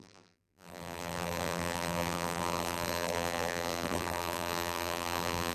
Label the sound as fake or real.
fake